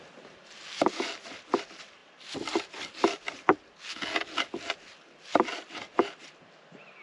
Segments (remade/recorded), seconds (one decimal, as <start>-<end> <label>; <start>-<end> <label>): 0.0-7.0 recorded